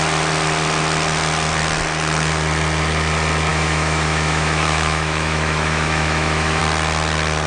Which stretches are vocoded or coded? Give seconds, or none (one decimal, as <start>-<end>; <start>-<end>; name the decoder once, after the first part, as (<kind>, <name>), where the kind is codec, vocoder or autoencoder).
3.5-6.6 (autoencoder, DAC-VAE)